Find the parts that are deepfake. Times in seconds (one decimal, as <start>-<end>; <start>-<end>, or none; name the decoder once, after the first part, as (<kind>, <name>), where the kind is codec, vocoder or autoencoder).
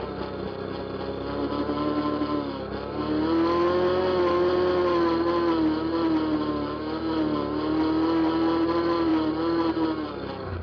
none